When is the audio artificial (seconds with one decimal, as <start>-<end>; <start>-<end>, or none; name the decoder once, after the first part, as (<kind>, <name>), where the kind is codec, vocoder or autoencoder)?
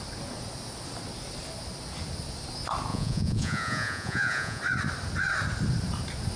2.9-4.6 (vocoder, Vocos)